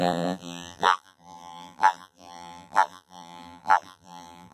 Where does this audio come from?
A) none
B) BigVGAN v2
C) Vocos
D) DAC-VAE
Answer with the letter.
B